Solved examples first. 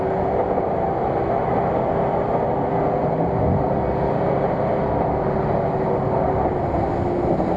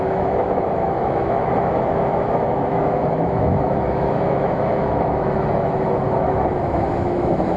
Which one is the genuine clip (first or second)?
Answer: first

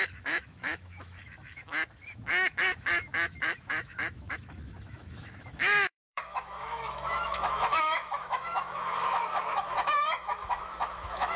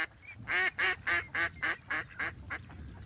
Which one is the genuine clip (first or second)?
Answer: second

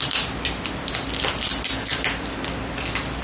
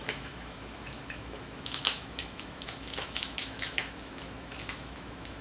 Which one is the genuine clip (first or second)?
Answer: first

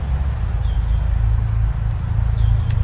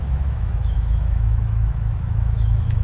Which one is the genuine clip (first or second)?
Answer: first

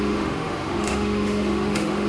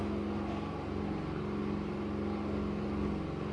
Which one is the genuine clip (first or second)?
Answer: second